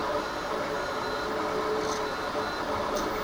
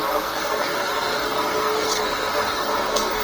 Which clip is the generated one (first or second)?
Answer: second